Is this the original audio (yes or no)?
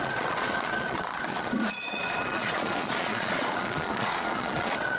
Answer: no